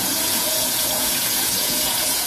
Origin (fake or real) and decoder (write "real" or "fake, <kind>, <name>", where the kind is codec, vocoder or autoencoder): fake, vocoder, Vocos